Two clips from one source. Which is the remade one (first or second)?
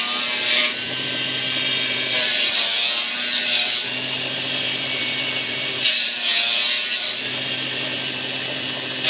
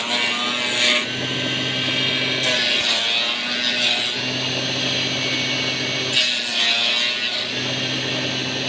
first